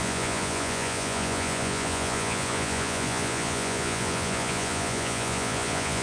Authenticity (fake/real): fake